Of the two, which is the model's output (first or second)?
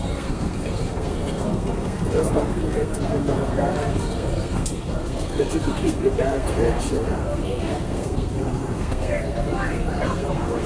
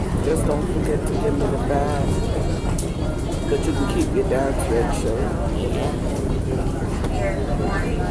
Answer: first